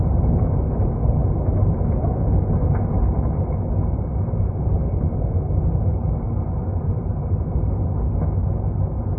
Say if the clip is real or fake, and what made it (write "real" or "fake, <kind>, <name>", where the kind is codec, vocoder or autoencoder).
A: real